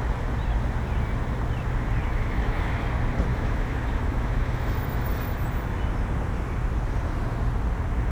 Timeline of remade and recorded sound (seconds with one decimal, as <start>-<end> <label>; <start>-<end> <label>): 0.0-2.0 recorded; 2.0-2.7 remade; 2.7-3.3 recorded; 3.3-5.1 remade; 5.1-8.1 recorded